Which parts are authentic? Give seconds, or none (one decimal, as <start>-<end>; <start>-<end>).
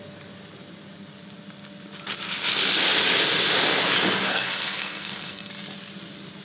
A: 0.0-4.3; 5.5-6.4